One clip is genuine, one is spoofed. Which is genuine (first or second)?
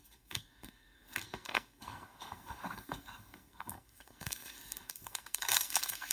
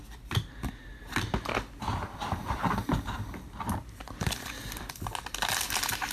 second